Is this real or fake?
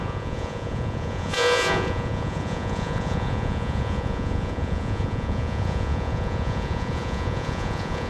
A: fake